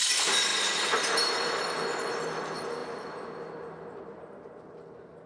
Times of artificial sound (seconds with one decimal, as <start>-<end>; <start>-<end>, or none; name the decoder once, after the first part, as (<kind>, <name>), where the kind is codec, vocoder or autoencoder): none